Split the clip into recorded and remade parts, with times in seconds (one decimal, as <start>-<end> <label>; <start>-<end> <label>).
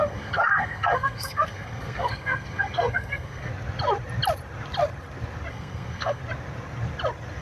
0.0-3.5 remade; 3.5-5.5 recorded; 5.5-6.2 remade; 6.2-7.4 recorded